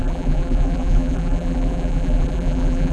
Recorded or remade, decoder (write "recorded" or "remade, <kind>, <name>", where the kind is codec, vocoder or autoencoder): remade, vocoder, BigVGAN v2